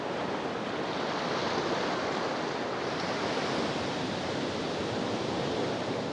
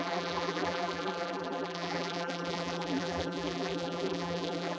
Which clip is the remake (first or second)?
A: second